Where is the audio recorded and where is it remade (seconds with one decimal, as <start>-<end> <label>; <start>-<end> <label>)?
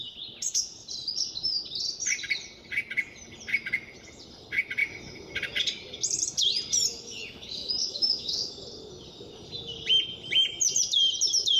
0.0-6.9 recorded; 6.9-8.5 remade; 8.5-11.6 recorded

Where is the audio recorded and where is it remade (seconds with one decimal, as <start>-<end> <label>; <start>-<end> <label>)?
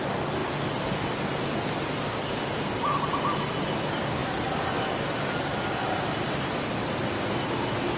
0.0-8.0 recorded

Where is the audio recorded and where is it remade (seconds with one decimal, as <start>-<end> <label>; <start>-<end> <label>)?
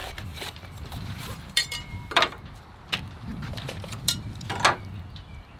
0.0-2.2 remade; 2.2-3.3 recorded; 3.3-4.5 remade; 4.5-5.6 recorded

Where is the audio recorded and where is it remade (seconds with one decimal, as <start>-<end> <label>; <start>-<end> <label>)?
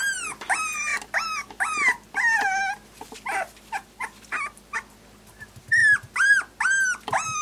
0.0-7.4 recorded